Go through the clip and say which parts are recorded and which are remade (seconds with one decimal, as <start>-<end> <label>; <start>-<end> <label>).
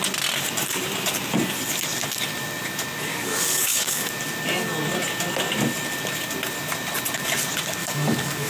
0.0-3.1 recorded; 3.1-4.1 remade; 4.1-7.8 recorded; 7.8-8.5 remade